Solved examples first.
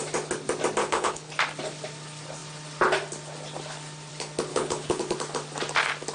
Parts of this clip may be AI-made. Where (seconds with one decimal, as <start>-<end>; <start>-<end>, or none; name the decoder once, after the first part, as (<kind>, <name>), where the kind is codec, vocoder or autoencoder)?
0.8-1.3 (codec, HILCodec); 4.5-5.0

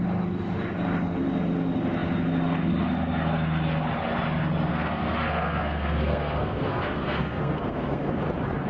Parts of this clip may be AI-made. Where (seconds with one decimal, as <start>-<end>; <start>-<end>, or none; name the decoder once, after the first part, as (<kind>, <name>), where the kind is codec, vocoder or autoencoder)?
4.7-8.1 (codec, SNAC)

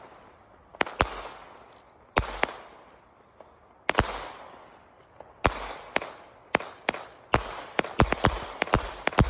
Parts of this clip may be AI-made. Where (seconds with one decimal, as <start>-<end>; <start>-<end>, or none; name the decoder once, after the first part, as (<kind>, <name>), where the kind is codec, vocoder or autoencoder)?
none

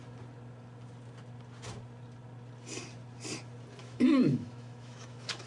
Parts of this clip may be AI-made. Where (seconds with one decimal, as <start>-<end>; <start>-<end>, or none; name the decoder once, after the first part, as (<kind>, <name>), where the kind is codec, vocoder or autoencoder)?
3.8-5.5 (autoencoder, DAC-VAE)

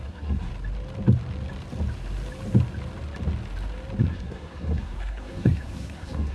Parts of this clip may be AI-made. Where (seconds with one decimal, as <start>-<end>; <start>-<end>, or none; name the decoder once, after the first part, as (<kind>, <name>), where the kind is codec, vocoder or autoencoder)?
0.0-0.5 (codec, SNAC); 4.0-6.3

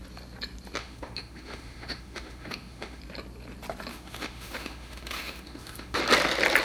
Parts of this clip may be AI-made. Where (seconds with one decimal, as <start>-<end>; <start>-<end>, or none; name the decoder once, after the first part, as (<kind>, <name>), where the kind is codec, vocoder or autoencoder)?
0.8-3.0 (autoencoder, DAC-VAE); 3.9-6.0

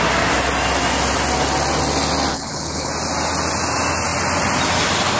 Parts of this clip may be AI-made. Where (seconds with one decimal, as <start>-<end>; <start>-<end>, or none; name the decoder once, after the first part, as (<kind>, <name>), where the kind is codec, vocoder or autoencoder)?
2.3-2.9 (codec, HILCodec)

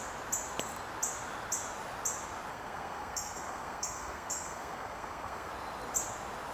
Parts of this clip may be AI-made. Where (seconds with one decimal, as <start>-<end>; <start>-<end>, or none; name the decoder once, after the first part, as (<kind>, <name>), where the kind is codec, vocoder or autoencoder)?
2.5-5.5 (codec, SNAC)